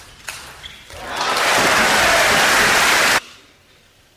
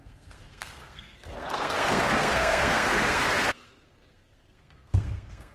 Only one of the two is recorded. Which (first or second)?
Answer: first